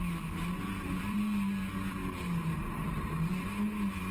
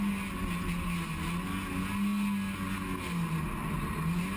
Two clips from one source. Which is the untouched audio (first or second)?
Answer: second